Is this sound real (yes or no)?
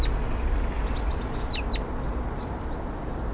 yes